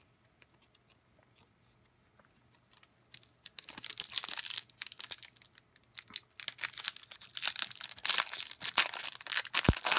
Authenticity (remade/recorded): recorded